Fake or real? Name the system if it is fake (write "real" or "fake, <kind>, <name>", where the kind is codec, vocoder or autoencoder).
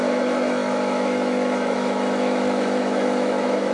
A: fake, autoencoder, DAC-VAE